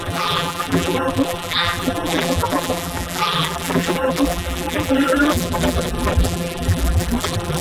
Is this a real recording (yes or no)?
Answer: no